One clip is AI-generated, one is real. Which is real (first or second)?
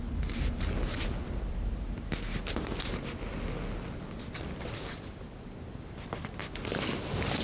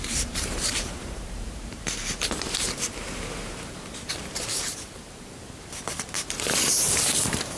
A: first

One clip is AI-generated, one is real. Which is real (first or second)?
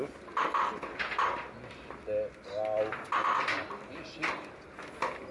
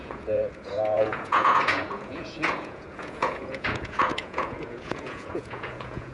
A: first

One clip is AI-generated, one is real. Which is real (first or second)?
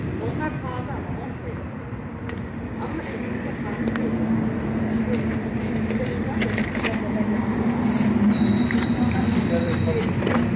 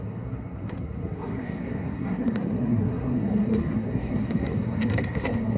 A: first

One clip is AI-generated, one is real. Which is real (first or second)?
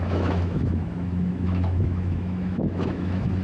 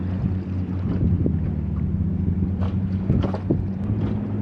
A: second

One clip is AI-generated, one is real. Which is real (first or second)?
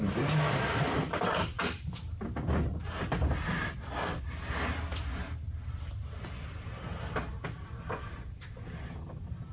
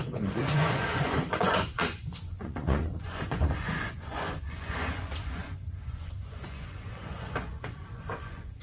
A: first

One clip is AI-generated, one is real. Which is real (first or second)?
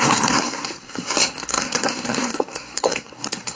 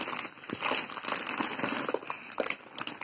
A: second